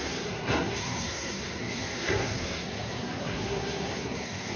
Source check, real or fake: fake